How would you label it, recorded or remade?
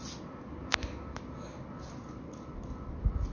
recorded